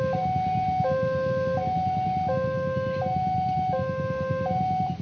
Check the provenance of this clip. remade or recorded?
recorded